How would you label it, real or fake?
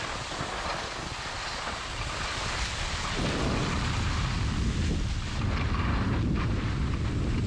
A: real